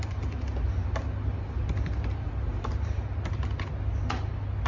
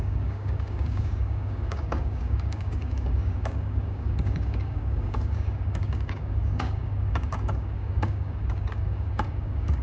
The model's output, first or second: second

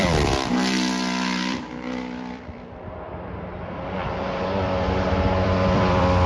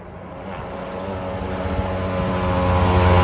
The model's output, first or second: first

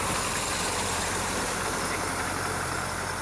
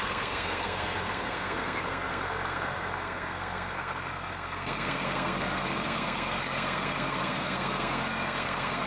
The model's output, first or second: second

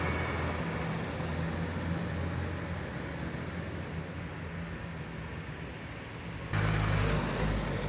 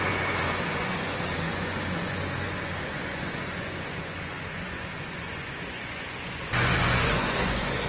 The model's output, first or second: second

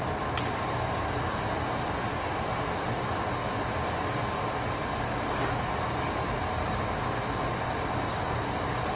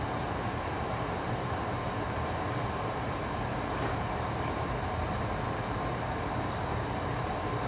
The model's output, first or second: second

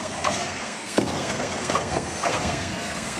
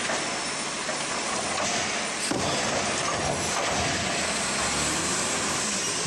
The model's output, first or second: first